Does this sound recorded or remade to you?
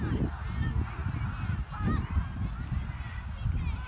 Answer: recorded